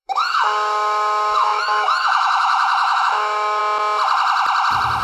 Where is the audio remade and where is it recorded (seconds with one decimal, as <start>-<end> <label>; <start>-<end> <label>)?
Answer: 0.0-3.6 remade; 3.6-5.0 recorded

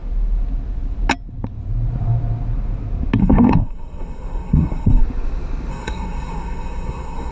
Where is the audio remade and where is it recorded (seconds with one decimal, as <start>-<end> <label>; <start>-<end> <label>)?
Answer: 0.0-3.2 recorded; 3.2-5.0 remade; 5.0-5.7 recorded; 5.7-7.3 remade

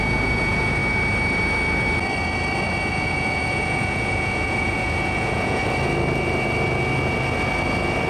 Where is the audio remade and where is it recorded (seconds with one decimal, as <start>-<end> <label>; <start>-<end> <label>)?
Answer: 0.0-0.8 remade; 0.8-2.9 recorded; 2.9-5.6 remade; 5.6-8.1 recorded

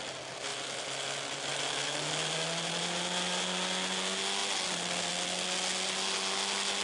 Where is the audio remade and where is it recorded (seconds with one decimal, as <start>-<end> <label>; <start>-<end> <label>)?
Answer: 0.0-6.8 recorded

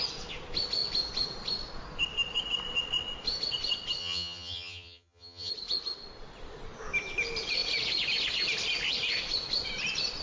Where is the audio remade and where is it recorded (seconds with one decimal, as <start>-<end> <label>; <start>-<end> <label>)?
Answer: 0.0-4.0 recorded; 4.0-5.5 remade; 5.5-10.2 recorded